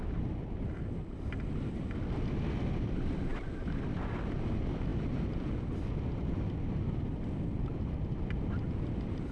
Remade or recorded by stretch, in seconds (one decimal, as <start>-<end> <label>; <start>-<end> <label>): 0.0-9.3 recorded